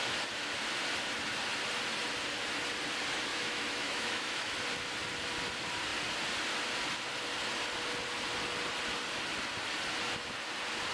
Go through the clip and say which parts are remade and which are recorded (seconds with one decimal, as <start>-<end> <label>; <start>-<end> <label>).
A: 0.0-3.3 recorded; 3.3-4.6 remade; 4.6-10.9 recorded